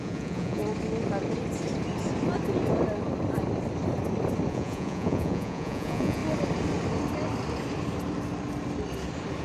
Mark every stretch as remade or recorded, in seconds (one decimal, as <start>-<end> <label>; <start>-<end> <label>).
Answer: 0.0-0.6 remade; 0.6-4.5 recorded; 4.5-6.2 remade; 6.2-9.4 recorded